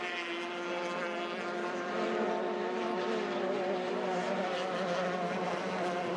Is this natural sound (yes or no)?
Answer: yes